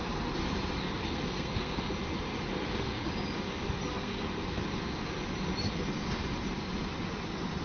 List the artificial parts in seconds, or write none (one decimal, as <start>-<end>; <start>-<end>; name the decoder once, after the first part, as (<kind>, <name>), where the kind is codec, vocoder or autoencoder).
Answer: 1.0-1.9 (codec, SNAC); 2.5-3.1; 3.9-4.6